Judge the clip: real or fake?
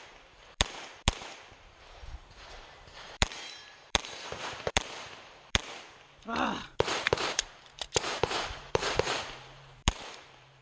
fake